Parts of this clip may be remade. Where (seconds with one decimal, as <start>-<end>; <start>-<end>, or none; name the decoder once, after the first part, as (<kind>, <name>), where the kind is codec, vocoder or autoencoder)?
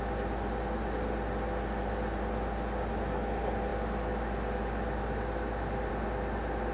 none